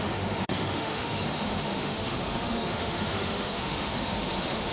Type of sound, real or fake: fake